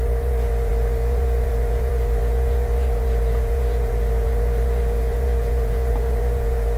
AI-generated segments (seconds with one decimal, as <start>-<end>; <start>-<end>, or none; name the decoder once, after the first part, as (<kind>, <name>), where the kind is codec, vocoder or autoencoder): 0.0-6.8 (vocoder, Vocos)